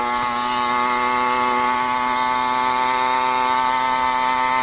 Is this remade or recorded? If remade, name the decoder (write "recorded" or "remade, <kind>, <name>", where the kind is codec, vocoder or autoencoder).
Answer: recorded